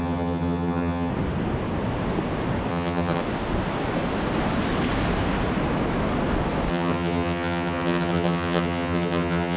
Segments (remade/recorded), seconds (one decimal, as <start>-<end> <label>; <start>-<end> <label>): 0.0-1.1 remade; 1.1-2.7 recorded; 2.7-3.2 remade; 3.2-6.7 recorded; 6.7-9.6 remade